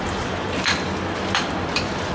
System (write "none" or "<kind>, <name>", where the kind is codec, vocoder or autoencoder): vocoder, BigVGAN v2